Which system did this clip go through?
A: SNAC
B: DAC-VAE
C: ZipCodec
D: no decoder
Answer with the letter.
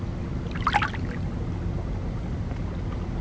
D